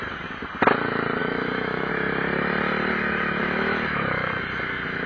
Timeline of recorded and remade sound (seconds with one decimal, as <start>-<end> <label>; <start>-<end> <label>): 0.0-1.2 recorded; 1.2-1.9 remade; 1.9-3.4 recorded; 3.4-4.3 remade; 4.3-5.1 recorded